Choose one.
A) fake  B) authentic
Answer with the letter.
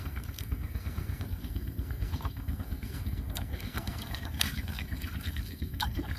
A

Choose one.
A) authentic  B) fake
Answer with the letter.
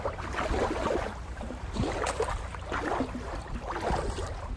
A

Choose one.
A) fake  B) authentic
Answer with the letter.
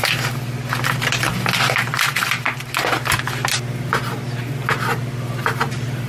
B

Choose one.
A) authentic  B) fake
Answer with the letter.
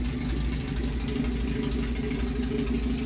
A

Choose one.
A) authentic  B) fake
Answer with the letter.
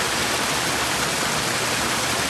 A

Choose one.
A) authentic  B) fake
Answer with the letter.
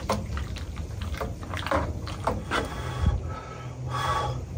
A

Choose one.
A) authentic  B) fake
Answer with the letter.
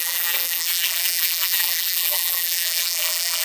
B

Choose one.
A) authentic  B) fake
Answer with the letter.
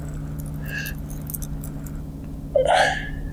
A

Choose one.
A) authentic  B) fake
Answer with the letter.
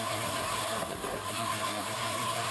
B